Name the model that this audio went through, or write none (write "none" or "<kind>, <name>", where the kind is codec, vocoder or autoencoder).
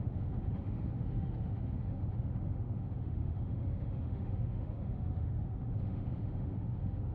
autoencoder, DAC-VAE